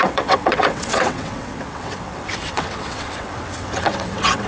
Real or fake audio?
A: fake